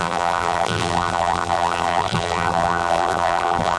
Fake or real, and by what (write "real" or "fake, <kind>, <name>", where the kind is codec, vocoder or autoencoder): fake, vocoder, BigVGAN v2